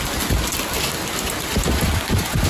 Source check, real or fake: real